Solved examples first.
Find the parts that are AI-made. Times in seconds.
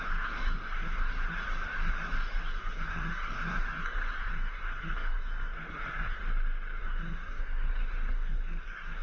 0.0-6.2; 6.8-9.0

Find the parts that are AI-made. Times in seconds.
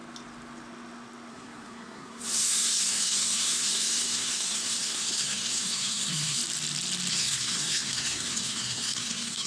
1.3-6.4; 7.1-9.5